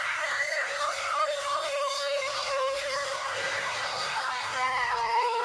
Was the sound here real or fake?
fake